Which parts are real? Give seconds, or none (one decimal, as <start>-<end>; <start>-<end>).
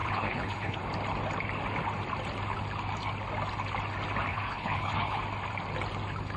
0.8-4.3; 5.2-6.4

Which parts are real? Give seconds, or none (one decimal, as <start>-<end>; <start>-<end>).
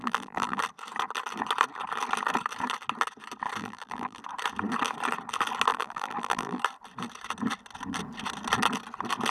0.6-3.6; 4.2-5.7; 6.6-9.3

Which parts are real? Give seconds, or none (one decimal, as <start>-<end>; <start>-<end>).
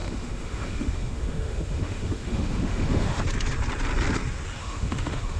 3.2-4.6